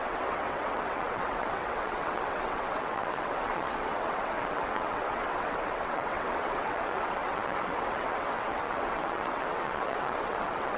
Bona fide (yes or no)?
no